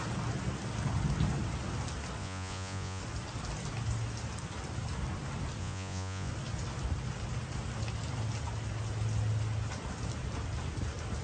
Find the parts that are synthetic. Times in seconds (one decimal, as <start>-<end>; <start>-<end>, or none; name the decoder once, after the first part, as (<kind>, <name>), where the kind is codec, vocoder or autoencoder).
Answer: 2.2-3.0 (vocoder, Vocos); 5.6-6.3